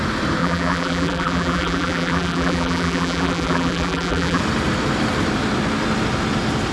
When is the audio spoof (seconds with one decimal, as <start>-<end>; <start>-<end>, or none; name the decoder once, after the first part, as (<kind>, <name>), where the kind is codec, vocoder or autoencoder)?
0.4-4.4 (vocoder, BigVGAN v2)